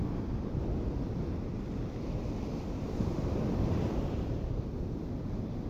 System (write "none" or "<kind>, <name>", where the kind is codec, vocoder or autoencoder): none